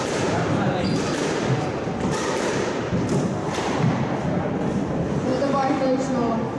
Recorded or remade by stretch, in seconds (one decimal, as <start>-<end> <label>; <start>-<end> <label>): 0.0-5.3 remade; 5.3-6.6 recorded